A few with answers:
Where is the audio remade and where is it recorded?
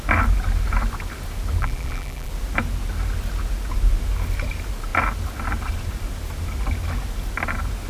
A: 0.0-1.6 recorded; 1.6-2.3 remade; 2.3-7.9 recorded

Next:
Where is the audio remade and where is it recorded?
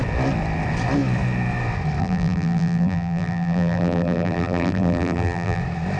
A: 0.0-2.0 recorded; 2.0-5.6 remade; 5.6-6.0 recorded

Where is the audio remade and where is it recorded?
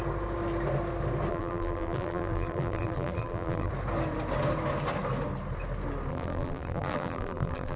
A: 0.0-1.3 recorded; 1.3-3.7 remade; 3.7-6.1 recorded; 6.1-7.8 remade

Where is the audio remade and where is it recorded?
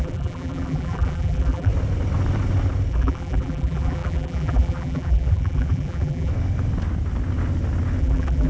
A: 0.0-1.7 remade; 1.7-2.9 recorded; 2.9-6.3 remade; 6.3-8.0 recorded; 8.0-8.5 remade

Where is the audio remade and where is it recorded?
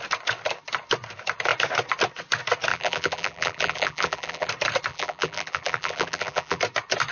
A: 0.0-2.7 recorded; 2.7-4.5 remade; 4.5-4.9 recorded; 4.9-6.6 remade; 6.6-7.1 recorded